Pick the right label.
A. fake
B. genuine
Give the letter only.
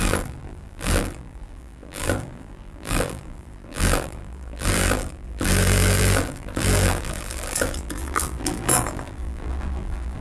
A